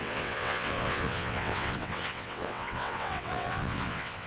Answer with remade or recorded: remade